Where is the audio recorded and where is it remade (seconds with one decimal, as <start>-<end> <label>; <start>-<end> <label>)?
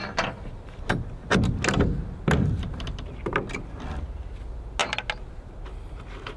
0.0-6.4 recorded